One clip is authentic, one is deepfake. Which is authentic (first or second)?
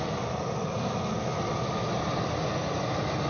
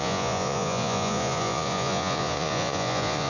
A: first